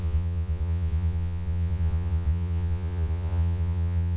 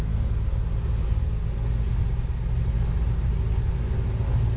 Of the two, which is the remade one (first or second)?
first